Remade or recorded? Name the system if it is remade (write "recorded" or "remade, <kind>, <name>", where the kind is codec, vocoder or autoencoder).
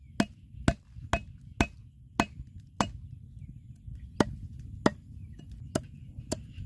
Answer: recorded